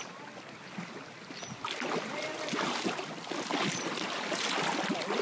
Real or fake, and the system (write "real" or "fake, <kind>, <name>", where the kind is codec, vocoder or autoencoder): real